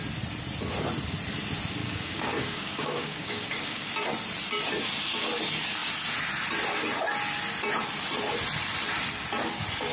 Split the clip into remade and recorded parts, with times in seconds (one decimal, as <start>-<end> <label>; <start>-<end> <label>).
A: 0.0-1.8 recorded; 1.8-3.9 remade; 3.9-9.9 recorded